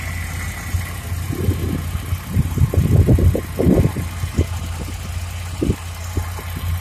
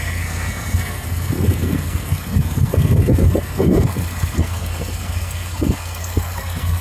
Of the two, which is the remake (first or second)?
second